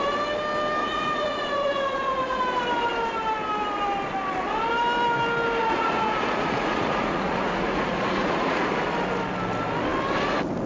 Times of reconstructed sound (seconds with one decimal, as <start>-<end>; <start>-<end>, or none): 0.8-2.4; 5.6-8.7